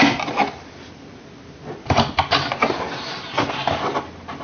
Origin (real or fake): real